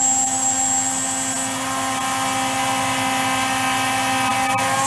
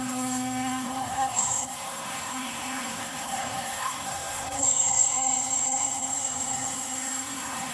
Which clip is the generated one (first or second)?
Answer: second